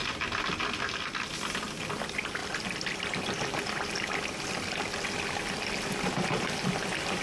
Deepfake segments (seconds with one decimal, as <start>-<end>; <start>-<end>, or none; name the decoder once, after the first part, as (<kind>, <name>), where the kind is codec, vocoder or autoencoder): none